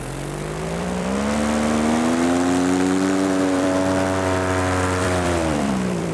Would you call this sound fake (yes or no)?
yes